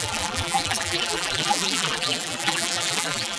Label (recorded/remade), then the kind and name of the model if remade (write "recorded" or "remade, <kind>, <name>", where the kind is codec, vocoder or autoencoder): remade, vocoder, BigVGAN v2